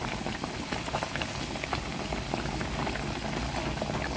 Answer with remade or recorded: recorded